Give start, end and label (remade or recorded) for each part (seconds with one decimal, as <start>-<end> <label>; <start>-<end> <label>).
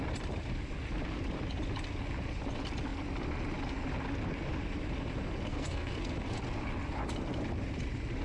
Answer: 0.0-5.5 recorded; 5.5-6.4 remade; 6.4-8.2 recorded